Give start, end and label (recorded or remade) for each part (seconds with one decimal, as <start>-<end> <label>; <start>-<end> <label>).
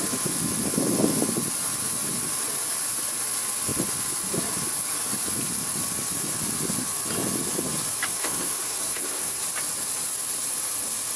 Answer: 0.0-8.1 recorded; 8.1-9.4 remade; 9.4-11.2 recorded